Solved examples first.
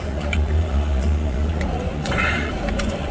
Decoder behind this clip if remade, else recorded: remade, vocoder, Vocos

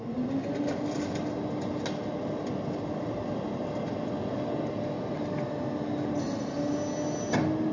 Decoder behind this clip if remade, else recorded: recorded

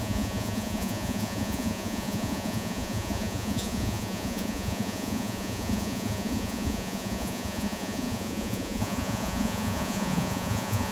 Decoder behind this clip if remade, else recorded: remade, vocoder, Vocos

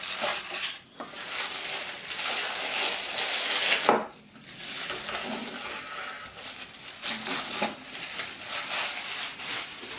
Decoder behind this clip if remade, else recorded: recorded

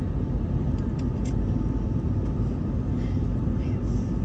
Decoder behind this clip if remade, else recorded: recorded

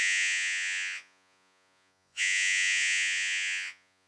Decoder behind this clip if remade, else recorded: remade, vocoder, Vocos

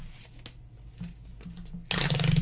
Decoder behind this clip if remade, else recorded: recorded